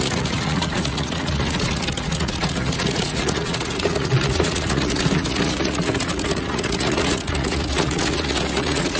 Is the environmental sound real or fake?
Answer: fake